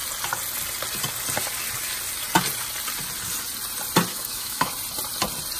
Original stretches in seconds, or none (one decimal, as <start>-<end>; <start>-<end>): 0.0-4.1; 4.7-5.6